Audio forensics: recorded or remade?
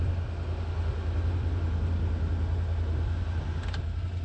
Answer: recorded